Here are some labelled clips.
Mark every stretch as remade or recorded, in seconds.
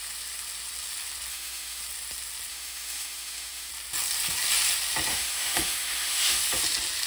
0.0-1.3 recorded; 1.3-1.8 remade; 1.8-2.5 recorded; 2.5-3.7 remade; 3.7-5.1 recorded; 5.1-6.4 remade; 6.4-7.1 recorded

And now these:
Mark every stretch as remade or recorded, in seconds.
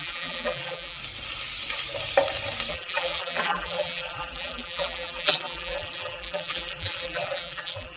0.0-1.0 remade; 1.0-2.7 recorded; 2.7-8.0 remade